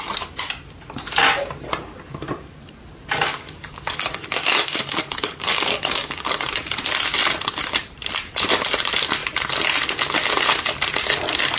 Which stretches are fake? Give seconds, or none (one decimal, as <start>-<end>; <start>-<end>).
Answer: 3.3-6.6